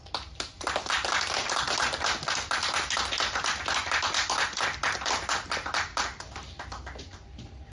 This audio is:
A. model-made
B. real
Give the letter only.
B